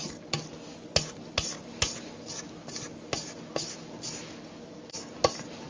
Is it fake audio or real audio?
real